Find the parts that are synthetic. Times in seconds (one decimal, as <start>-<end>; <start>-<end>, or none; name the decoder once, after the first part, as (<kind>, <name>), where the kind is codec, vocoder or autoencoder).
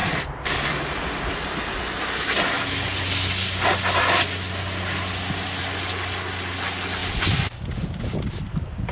7.0-7.5 (vocoder, BigVGAN v2)